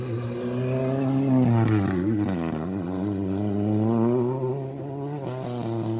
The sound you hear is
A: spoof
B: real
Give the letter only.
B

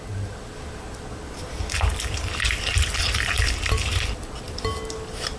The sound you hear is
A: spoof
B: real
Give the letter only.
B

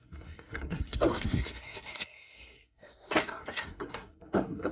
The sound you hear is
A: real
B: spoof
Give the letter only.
B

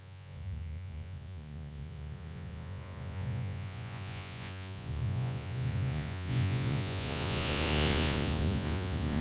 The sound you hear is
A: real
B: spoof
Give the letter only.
B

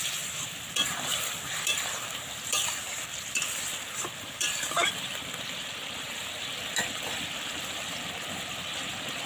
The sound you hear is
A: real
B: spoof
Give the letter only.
B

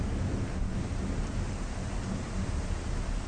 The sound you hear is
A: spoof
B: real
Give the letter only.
B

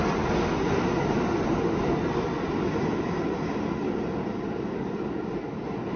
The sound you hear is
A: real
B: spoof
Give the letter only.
A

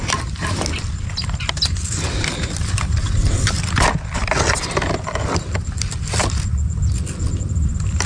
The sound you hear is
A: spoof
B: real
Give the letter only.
B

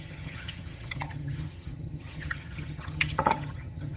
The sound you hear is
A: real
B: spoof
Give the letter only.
B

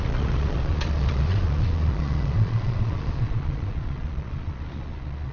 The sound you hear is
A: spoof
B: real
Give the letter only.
A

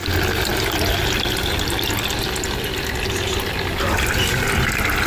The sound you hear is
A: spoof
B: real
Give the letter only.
B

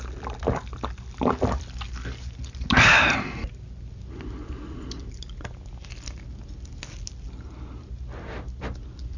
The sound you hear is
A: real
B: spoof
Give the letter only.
A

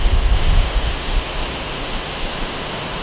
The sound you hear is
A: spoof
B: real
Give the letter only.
A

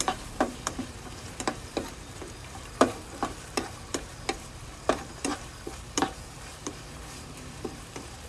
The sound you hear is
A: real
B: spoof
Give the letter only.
B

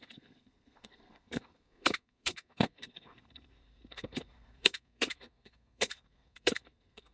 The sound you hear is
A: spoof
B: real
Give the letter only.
A